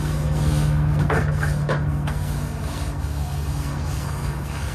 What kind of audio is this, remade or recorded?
remade